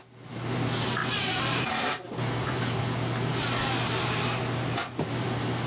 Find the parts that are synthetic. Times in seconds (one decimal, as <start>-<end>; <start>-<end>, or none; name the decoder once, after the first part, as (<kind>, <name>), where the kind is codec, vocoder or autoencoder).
1.0-2.8 (vocoder, BigVGAN v2)